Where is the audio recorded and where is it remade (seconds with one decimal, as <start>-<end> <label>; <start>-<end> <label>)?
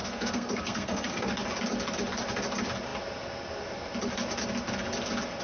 0.0-1.3 remade; 1.3-5.4 recorded